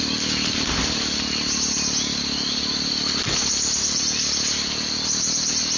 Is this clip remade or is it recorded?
recorded